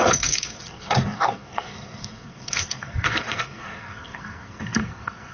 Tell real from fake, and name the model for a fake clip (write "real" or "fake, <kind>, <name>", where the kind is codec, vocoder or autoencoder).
fake, codec, SNAC